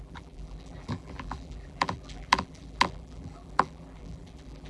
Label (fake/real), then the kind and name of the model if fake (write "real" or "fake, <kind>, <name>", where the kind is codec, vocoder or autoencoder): fake, vocoder, BigVGAN v2